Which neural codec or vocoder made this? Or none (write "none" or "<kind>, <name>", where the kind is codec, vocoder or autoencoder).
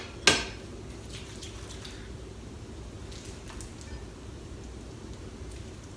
none